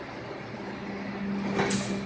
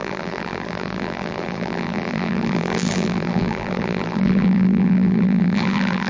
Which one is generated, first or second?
second